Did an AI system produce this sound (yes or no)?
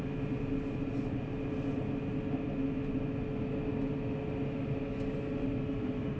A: no